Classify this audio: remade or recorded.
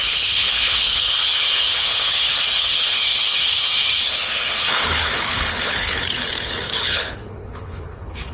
remade